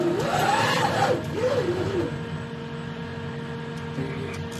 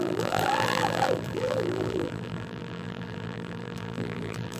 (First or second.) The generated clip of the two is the second